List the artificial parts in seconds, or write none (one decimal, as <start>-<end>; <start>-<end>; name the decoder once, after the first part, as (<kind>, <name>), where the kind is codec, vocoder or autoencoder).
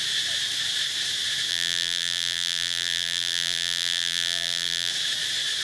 1.5-4.9 (vocoder, BigVGAN v2)